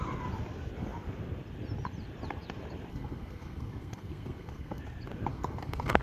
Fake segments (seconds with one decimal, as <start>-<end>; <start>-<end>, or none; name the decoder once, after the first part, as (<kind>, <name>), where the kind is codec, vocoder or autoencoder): 2.9-4.8 (codec, SNAC); 5.3-6.0

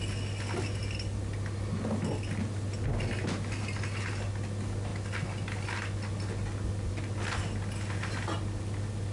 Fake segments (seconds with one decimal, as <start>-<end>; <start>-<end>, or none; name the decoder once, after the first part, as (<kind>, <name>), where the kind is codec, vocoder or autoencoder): none

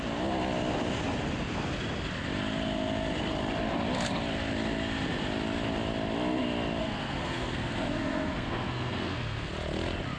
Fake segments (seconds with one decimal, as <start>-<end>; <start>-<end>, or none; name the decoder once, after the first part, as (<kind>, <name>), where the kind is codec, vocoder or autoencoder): 6.8-9.5 (codec, SNAC)